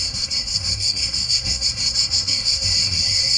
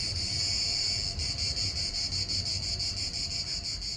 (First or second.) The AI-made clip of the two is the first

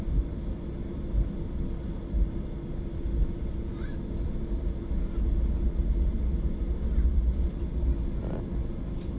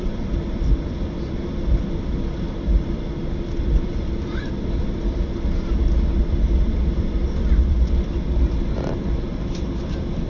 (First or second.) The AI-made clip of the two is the second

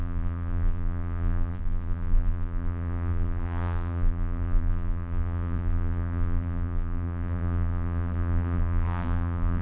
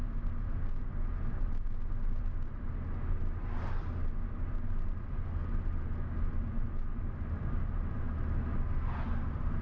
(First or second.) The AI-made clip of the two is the first